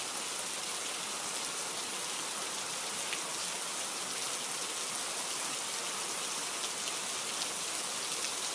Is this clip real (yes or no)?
yes